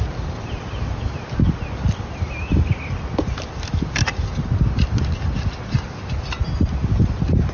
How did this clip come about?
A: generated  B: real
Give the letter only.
B